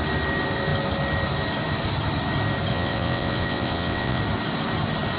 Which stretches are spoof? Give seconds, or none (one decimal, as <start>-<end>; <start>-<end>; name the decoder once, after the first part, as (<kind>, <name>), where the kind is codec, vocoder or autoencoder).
2.7-4.2 (vocoder, WaveNeXt)